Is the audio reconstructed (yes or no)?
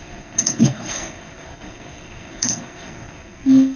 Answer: yes